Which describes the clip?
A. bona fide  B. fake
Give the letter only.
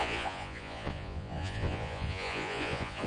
B